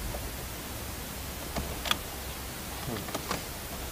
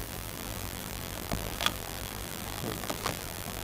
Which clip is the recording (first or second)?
first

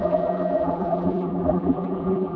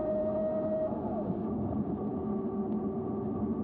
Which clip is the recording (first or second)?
second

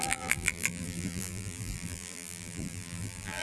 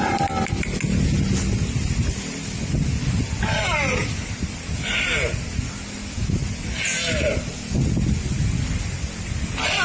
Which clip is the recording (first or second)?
second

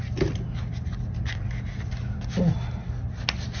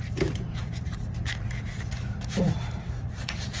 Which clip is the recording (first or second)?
first